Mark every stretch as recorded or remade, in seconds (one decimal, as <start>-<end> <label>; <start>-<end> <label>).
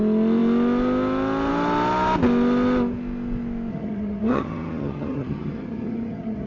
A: 0.0-3.7 recorded; 3.7-6.5 remade